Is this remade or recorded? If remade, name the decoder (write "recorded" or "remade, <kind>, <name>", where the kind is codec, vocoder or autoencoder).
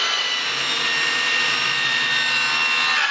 recorded